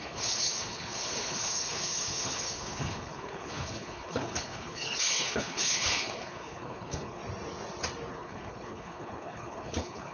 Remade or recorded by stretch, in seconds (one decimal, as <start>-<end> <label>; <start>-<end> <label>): 0.0-7.2 remade; 7.2-8.1 recorded; 8.1-10.1 remade